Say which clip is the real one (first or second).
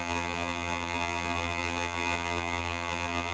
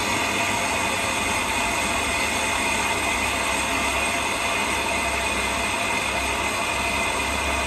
second